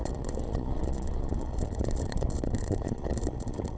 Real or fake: fake